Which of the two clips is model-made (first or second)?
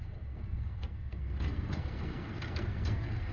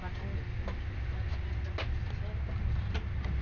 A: first